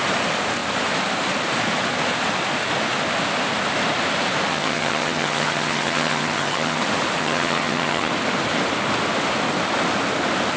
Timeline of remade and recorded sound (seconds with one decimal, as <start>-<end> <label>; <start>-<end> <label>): 0.0-4.5 recorded; 4.5-6.8 remade; 6.8-7.2 recorded; 7.2-8.1 remade; 8.1-10.6 recorded